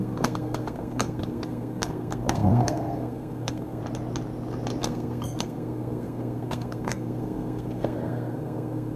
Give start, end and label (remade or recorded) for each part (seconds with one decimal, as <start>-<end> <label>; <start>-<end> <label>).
0.0-3.8 remade; 3.8-4.8 recorded; 4.8-9.0 remade